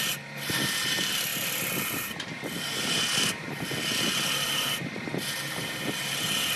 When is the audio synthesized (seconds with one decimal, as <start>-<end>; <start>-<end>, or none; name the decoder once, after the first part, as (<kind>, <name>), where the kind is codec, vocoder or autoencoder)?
none